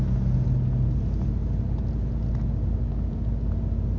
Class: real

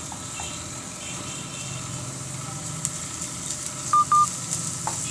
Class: real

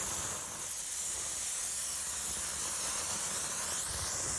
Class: real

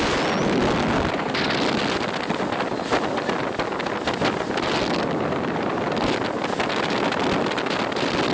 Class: real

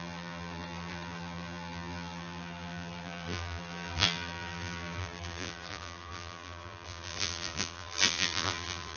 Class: fake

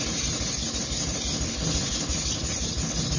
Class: real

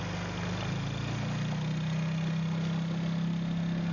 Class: real